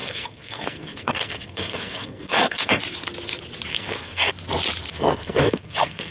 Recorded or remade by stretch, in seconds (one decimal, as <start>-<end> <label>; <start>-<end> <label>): 0.0-2.8 remade; 2.8-3.7 recorded; 3.7-4.3 remade; 4.3-4.9 recorded; 4.9-6.1 remade